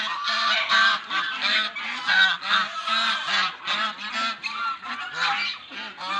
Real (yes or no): yes